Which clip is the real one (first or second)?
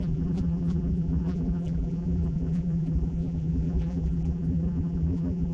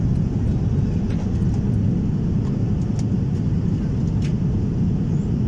second